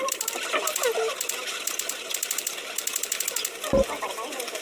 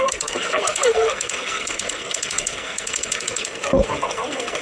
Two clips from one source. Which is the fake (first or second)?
second